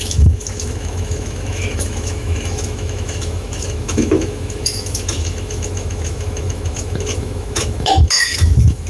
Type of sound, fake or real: fake